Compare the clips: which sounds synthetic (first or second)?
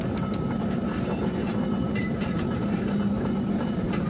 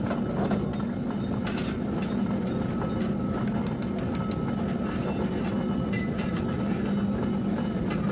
first